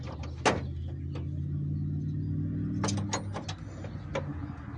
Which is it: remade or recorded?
recorded